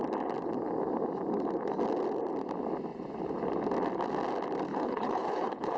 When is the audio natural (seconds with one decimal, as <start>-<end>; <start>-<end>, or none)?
0.0-4.7